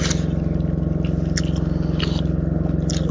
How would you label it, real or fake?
real